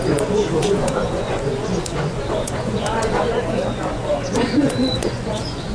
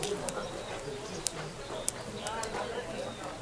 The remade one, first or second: first